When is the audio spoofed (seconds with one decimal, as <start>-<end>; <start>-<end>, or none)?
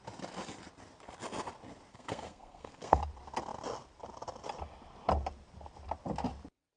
1.9-3.0